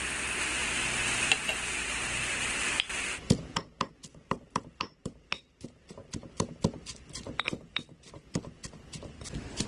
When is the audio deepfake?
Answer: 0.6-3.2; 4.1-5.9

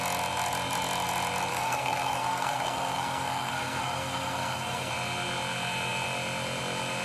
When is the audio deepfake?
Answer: 1.5-4.9

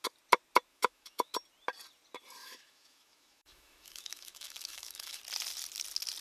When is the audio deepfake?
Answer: 0.7-1.3; 2.4-5.2

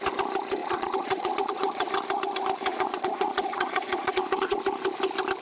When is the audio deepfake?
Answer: 0.6-1.9; 2.7-4.6

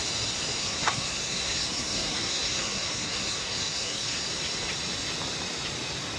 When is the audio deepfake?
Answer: 0.6-4.3

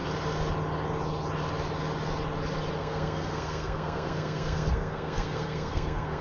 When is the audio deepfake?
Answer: 2.8-6.2